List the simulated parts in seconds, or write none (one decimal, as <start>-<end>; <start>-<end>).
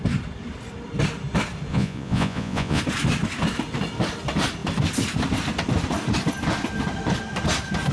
1.7-2.8